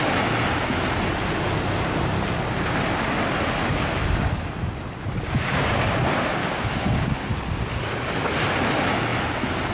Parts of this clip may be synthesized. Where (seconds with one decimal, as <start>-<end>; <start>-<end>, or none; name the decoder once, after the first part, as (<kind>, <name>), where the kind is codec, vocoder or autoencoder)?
6.4-7.3 (codec, DAC)